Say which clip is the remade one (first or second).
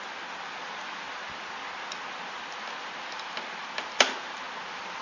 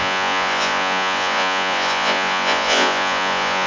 second